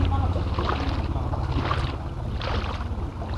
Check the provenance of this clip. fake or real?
real